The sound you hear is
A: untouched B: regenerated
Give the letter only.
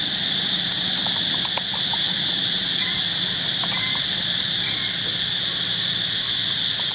A